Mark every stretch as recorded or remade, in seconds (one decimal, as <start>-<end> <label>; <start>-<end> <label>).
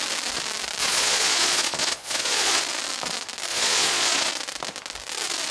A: 0.0-0.8 recorded; 0.8-2.6 remade; 2.6-3.5 recorded; 3.5-4.3 remade; 4.3-5.5 recorded